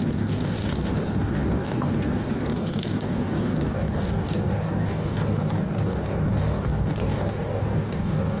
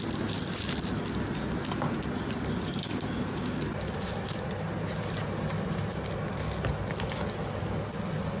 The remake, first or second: first